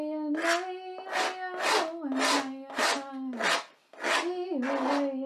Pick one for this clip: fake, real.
real